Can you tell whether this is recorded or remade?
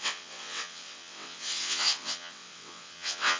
remade